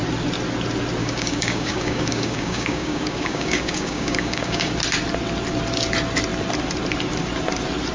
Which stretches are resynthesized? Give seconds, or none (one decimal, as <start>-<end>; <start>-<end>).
1.0-4.7